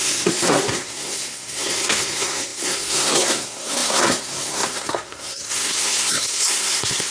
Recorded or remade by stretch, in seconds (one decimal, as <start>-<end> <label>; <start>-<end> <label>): 0.0-7.1 remade